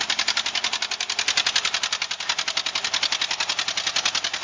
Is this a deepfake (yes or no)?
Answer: no